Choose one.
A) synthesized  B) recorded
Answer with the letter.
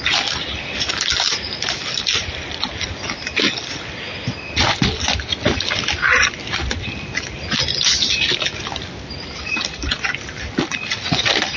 B